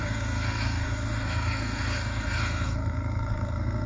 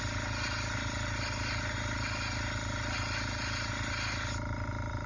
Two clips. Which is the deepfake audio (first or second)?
first